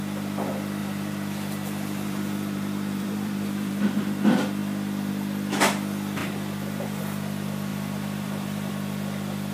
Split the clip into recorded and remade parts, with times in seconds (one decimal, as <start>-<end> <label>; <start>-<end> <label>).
0.0-0.8 recorded; 0.8-3.8 remade; 3.8-6.2 recorded; 6.2-7.0 remade; 7.0-7.7 recorded; 7.7-8.7 remade; 8.7-9.5 recorded